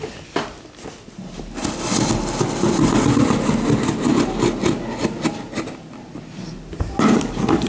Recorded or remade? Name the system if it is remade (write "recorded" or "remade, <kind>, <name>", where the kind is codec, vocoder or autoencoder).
recorded